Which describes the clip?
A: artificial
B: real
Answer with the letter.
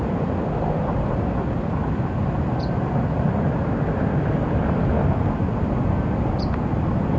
B